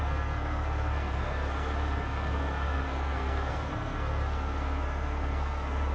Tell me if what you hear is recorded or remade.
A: remade